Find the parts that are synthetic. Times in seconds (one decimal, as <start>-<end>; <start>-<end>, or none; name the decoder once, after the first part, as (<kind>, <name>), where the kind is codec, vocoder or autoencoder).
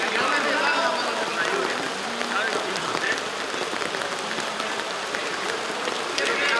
5.2-5.8 (vocoder, BigVGAN v2)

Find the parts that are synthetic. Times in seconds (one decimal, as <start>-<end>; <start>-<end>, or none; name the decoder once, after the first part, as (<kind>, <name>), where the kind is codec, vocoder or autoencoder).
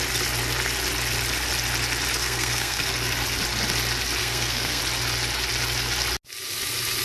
2.2-2.9 (codec, SNAC); 4.2-4.8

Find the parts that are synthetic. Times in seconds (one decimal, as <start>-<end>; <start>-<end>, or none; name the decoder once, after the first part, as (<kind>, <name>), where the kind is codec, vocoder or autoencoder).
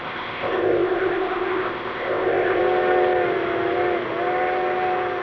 0.0-2.6 (codec, ZipCodec)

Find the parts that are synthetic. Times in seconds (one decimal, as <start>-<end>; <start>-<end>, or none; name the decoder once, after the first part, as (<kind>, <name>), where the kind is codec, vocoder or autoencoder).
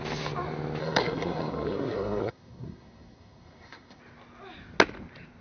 0.8-4.0 (codec, SNAC)